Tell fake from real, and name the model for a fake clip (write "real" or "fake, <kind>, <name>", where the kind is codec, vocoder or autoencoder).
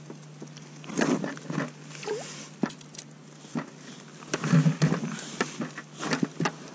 real